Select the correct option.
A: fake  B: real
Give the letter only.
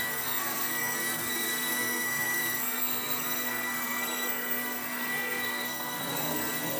A